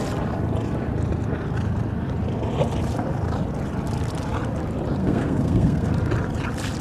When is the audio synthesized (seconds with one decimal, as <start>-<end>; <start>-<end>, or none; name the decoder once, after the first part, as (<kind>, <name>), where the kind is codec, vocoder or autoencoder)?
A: 5.0-5.9 (codec, SNAC)